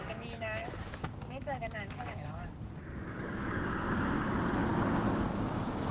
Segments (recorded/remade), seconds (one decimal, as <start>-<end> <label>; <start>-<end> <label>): 0.0-0.6 recorded; 0.6-4.1 remade; 4.1-4.6 recorded; 4.6-5.9 remade